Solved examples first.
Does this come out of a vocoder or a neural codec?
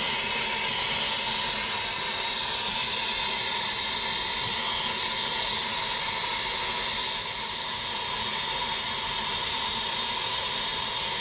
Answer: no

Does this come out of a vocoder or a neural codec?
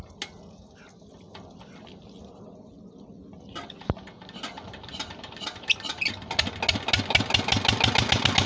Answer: no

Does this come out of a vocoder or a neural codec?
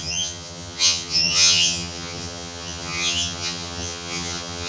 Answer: yes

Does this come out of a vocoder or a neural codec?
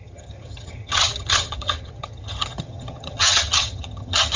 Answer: yes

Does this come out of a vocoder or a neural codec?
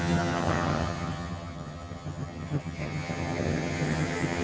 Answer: yes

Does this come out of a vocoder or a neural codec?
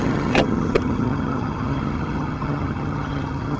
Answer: yes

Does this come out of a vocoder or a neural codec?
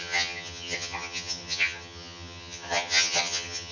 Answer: yes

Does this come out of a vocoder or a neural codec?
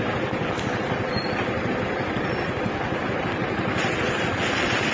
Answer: no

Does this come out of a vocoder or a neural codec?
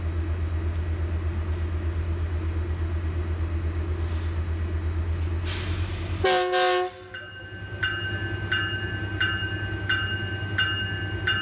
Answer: no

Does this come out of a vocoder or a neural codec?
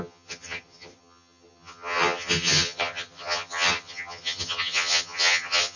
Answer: yes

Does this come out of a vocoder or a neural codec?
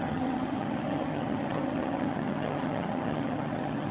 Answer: yes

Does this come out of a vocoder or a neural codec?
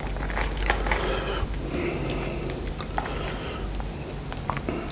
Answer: no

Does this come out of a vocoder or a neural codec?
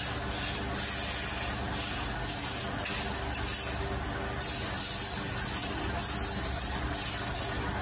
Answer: no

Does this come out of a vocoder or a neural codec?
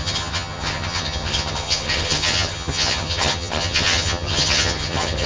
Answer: yes